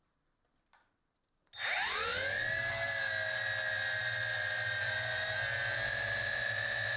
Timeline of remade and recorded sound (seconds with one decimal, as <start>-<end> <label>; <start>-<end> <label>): 0.0-7.0 recorded